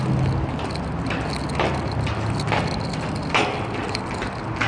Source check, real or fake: real